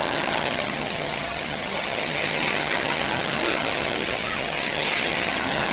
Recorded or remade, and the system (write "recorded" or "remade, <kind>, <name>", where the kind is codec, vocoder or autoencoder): remade, vocoder, HiFi-GAN